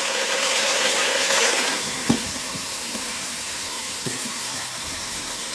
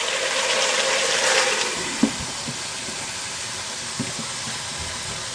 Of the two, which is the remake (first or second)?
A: first